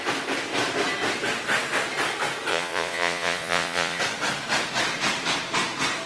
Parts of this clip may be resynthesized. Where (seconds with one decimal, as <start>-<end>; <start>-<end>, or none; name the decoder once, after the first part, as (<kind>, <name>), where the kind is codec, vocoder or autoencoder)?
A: 2.5-4.0 (vocoder, Vocos)